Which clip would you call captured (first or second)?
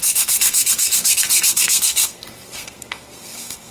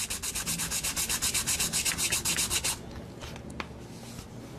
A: second